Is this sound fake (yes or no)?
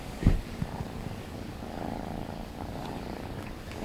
yes